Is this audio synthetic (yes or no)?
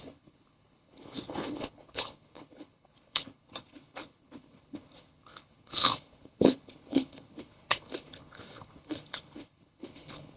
yes